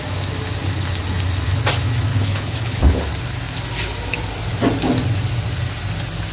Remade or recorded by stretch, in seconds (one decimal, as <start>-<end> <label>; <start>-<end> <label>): 0.0-2.1 recorded; 2.1-3.0 remade; 3.0-6.3 recorded